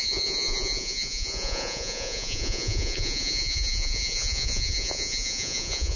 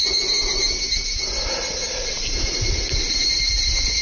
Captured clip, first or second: second